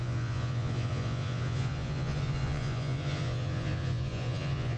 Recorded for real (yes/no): no